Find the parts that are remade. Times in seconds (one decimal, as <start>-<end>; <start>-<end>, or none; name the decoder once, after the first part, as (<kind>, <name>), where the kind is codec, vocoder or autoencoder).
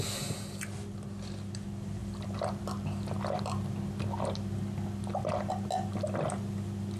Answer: none